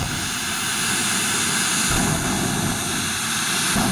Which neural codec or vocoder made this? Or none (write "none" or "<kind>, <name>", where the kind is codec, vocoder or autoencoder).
none